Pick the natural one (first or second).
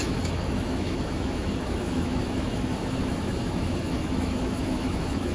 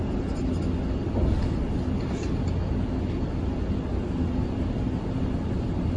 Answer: second